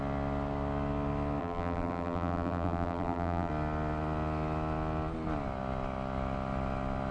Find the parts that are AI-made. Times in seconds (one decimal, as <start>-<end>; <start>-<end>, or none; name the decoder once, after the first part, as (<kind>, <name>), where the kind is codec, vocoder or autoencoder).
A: 1.4-3.5 (vocoder, BigVGAN v2)